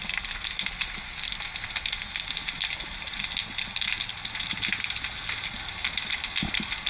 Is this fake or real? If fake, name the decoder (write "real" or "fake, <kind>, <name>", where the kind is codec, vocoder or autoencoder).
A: real